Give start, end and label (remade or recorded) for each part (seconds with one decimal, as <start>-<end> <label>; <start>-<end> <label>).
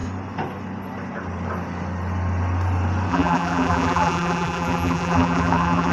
0.0-3.1 recorded; 3.1-5.9 remade